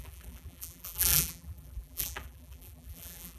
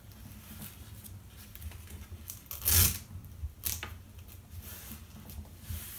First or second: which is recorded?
second